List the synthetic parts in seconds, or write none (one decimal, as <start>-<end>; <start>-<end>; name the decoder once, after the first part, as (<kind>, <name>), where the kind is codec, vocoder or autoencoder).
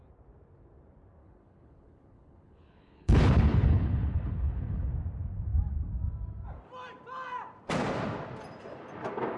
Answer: 1.2-4.9 (codec, HILCodec)